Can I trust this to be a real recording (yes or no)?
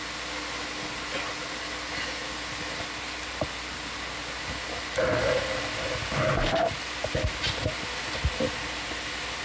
yes